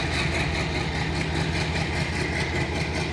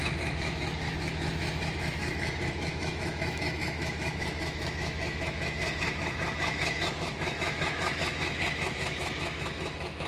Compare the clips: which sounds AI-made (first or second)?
second